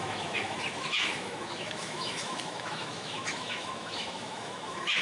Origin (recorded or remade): remade